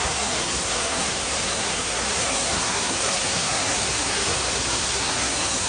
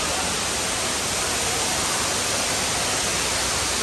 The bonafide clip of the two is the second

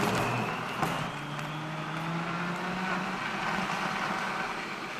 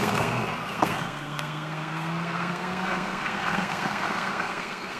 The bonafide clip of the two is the first